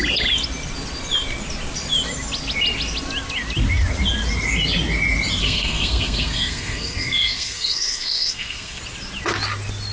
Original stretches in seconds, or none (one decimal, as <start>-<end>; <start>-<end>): 0.0-5.4; 8.8-9.9